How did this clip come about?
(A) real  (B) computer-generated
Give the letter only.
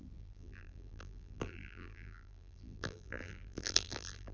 B